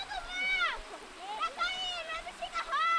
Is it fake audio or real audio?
fake